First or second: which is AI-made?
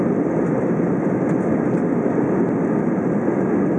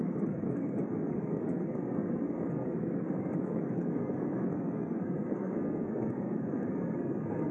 second